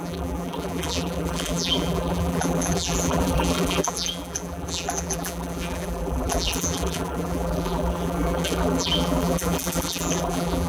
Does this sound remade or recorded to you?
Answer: remade